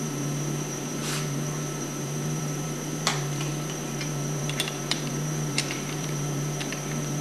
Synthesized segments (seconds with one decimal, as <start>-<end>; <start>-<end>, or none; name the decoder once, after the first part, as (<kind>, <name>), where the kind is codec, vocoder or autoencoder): 0.0-7.2 (vocoder, BigVGAN v2)

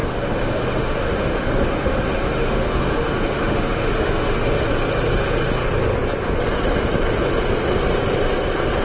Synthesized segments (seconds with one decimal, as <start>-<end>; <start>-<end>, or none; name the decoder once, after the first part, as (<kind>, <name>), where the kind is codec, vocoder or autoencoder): 0.0-4.7 (autoencoder, DAC-VAE)

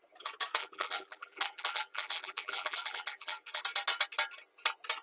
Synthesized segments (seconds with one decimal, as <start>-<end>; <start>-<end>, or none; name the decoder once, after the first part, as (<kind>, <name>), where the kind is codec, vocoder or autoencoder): 0.6-3.6 (vocoder, BigVGAN v2)

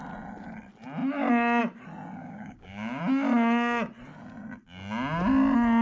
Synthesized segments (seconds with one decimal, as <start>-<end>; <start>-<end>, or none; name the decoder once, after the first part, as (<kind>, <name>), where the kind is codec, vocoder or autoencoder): 2.2-3.0 (codec, DAC)

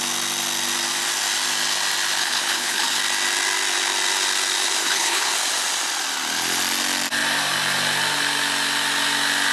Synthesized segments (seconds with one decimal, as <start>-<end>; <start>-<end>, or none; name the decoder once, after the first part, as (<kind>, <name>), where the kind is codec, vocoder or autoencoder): 2.2-3.0 (codec, HILCodec); 4.8-5.3